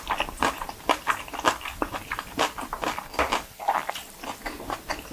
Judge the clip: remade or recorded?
remade